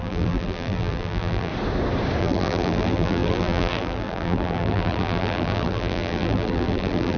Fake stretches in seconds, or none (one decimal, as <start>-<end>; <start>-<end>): 0.0-1.5; 2.2-7.2